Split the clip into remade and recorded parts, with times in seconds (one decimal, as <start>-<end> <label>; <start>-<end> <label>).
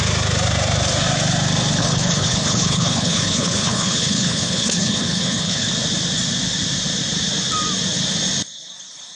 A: 0.0-1.8 recorded; 1.8-5.7 remade; 5.7-9.2 recorded